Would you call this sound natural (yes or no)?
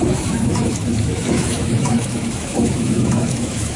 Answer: no